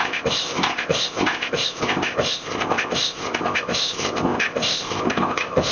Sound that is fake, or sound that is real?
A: fake